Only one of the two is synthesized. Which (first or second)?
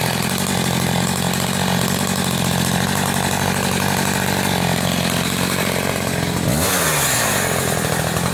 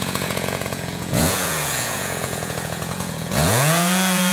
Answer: second